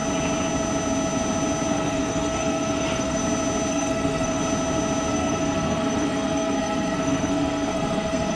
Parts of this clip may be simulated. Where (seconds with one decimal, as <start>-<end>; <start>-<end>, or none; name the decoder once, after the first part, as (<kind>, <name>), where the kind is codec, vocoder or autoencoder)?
1.7-3.2 (codec, SNAC); 3.7-4.4; 5.1-8.4